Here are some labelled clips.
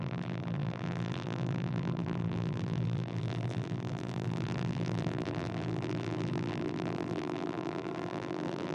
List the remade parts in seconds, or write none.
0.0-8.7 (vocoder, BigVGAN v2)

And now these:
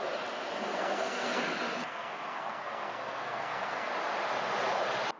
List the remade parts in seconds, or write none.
0.7-1.4 (codec, SNAC); 1.8-3.9

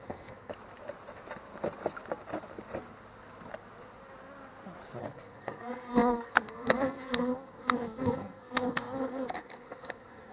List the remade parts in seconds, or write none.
0.0-0.5 (codec, SNAC); 5.0-10.3

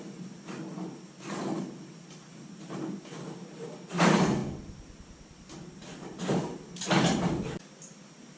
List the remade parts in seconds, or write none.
none